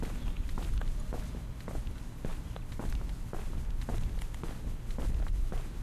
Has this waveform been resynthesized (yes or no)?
no